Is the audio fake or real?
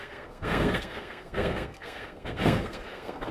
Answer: fake